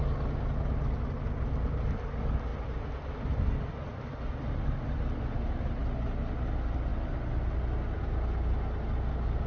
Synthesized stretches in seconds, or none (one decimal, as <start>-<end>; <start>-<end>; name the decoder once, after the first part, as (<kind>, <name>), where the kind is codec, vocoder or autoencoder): 2.5-3.2 (vocoder, BigVGAN v2)